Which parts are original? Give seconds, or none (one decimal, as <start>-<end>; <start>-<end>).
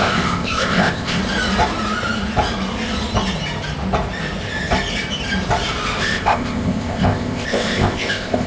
1.2-6.0